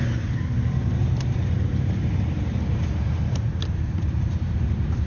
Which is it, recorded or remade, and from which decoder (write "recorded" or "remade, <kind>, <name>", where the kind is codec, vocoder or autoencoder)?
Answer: remade, vocoder, BigVGAN v2